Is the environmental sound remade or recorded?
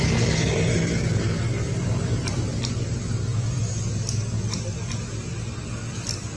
recorded